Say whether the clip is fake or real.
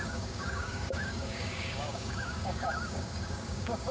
fake